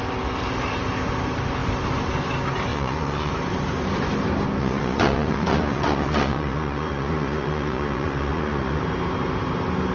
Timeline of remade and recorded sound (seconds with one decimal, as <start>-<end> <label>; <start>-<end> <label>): 0.0-2.7 recorded; 2.7-3.3 remade; 3.3-4.6 recorded; 4.6-8.8 remade; 8.8-9.9 recorded